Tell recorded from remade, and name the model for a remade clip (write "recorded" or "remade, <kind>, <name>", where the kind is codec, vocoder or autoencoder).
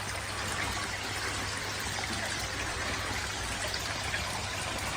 recorded